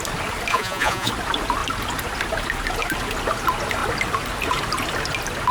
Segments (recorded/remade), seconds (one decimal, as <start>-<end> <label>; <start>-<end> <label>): 0.0-0.5 recorded; 0.5-1.1 remade; 1.1-5.5 recorded